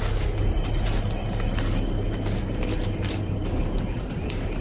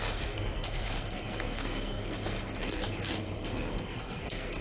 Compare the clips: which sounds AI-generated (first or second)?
second